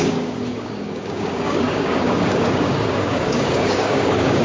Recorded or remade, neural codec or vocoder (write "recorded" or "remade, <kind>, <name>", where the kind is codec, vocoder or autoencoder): remade, codec, DAC